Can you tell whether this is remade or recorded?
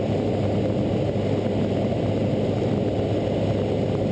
recorded